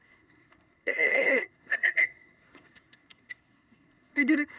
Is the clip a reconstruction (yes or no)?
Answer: yes